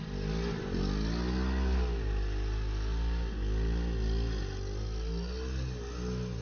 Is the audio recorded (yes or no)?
yes